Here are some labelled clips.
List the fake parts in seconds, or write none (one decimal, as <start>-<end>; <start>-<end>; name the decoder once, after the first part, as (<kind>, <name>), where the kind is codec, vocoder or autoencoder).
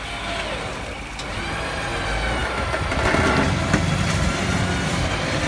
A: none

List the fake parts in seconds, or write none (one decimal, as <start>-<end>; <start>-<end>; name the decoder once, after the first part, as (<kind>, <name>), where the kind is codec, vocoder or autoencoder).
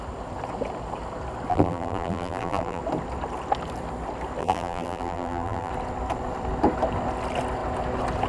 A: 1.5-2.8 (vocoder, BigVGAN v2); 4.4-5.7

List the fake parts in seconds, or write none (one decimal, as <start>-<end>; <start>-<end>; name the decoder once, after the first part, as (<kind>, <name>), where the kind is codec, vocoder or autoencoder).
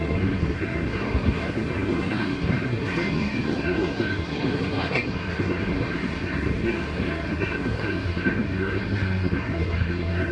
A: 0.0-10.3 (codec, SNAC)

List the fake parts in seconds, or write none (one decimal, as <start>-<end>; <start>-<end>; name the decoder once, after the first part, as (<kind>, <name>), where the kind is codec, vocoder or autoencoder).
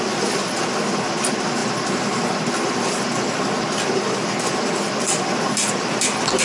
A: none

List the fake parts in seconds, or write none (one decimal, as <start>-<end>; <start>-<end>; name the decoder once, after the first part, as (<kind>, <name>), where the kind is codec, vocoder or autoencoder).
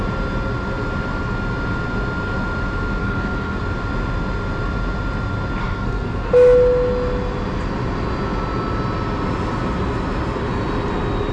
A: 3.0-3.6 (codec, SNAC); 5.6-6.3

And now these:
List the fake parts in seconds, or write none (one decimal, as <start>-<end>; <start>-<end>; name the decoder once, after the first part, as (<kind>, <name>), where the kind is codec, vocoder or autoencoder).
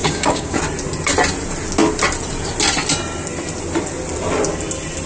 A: 0.0-0.6 (codec, DAC)